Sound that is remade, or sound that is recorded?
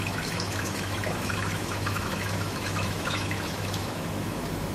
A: remade